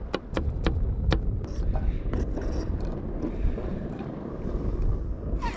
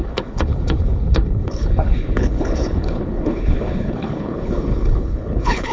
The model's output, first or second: second